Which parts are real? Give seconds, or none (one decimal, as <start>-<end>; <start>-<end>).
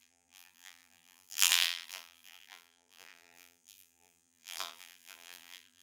none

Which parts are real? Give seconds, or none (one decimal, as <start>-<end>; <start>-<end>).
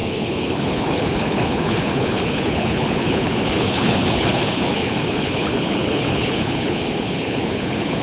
none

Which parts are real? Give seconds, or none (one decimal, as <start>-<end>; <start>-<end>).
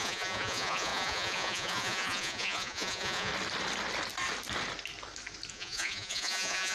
3.3-5.5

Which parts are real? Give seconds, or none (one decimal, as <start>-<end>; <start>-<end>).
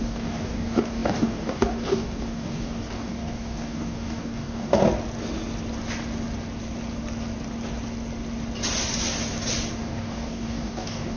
4.8-9.8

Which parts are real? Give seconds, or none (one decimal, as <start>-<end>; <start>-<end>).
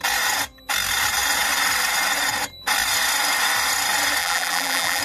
0.0-4.2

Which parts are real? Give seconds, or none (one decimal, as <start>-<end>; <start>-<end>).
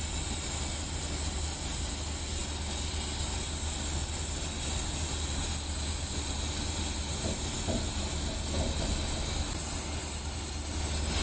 0.0-11.2